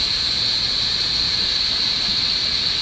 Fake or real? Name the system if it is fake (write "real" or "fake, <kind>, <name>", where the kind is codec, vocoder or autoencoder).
real